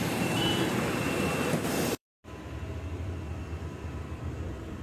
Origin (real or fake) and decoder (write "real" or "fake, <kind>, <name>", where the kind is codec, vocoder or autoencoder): fake, vocoder, BigVGAN v2